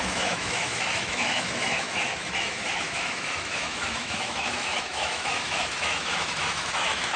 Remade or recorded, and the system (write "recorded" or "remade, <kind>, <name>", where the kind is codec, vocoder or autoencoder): remade, autoencoder, DAC-VAE